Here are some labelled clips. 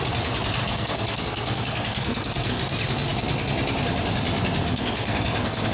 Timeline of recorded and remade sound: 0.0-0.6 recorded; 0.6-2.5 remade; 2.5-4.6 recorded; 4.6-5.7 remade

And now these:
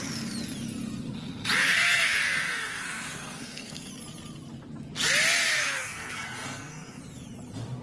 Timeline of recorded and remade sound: 0.0-1.6 recorded; 1.6-3.9 remade; 3.9-5.4 recorded; 5.4-7.0 remade; 7.0-7.8 recorded

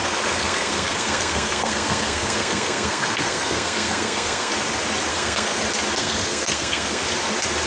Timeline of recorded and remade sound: 0.0-4.5 remade; 4.5-5.1 recorded; 5.1-5.6 remade; 5.6-6.0 recorded; 6.0-7.0 remade; 7.0-7.7 recorded

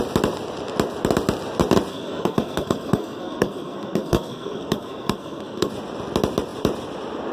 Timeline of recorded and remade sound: 0.0-1.9 recorded; 1.9-5.7 remade; 5.7-7.3 recorded

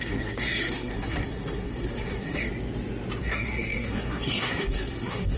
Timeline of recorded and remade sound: 0.0-2.5 remade; 2.5-3.2 recorded; 3.2-5.4 remade

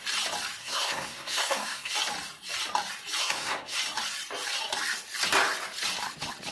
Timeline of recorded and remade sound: 0.0-0.6 recorded; 0.6-1.9 remade; 1.9-3.2 recorded; 3.2-3.8 remade; 3.8-6.5 recorded

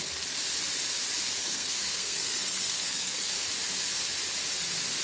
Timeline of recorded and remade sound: 0.0-1.4 recorded; 1.4-3.3 remade; 3.3-5.0 recorded

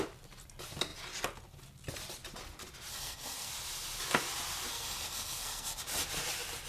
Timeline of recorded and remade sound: 0.0-2.9 recorded; 2.9-3.5 remade; 3.5-4.7 recorded; 4.7-5.8 remade; 5.8-6.7 recorded